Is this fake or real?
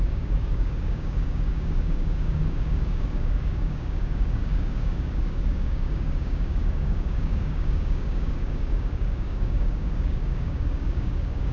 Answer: fake